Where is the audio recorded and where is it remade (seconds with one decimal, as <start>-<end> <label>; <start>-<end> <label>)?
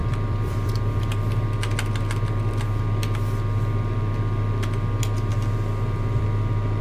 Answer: 0.0-0.9 remade; 0.9-6.8 recorded